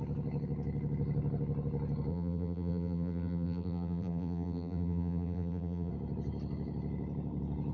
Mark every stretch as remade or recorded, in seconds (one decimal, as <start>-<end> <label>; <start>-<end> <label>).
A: 0.0-2.1 recorded; 2.1-5.9 remade; 5.9-7.7 recorded